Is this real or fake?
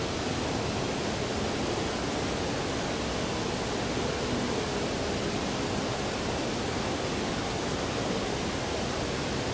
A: real